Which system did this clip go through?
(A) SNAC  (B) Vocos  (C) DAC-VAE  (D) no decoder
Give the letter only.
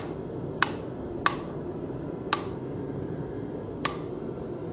D